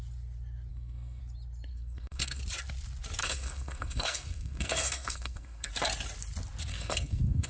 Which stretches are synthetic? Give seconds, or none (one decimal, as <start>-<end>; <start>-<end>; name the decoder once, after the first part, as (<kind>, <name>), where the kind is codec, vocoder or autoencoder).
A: 0.7-1.2 (codec, SNAC); 1.7-2.4; 3.2-5.7; 6.7-7.5